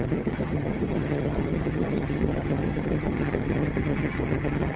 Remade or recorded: remade